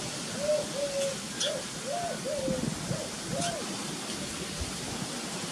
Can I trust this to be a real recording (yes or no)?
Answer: yes